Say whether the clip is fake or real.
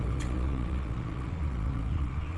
fake